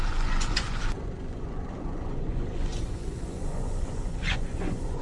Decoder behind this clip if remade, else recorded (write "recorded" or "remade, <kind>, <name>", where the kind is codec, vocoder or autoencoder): remade, vocoder, Vocos